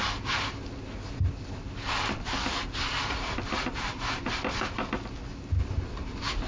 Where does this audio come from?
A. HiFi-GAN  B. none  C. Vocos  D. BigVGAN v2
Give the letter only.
B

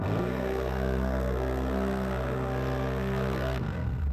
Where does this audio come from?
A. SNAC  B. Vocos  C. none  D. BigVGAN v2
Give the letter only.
A